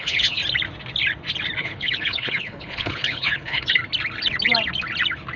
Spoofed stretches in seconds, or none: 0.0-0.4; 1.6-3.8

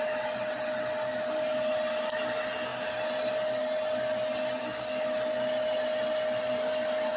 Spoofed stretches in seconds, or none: none